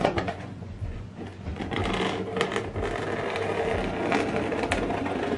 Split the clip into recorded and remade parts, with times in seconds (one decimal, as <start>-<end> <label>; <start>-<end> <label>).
0.0-1.8 remade; 1.8-5.0 recorded; 5.0-5.4 remade